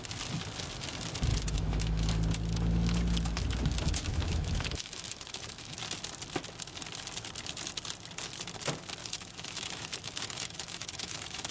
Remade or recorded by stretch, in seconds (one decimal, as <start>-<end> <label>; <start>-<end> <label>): 0.0-1.3 recorded; 1.3-2.1 remade; 2.1-4.1 recorded; 4.1-5.8 remade; 5.8-9.0 recorded; 9.0-11.5 remade